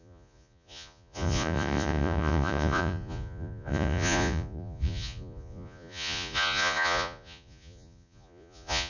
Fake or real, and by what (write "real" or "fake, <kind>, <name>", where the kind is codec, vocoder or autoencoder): fake, vocoder, Vocos